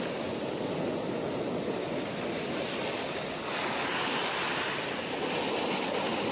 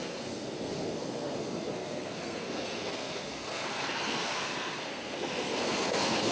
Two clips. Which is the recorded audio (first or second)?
first